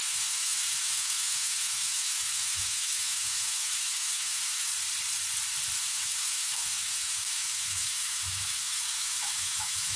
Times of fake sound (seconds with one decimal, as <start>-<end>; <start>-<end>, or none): 0.0-4.7; 5.8-10.0